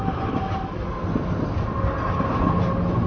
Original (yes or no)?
yes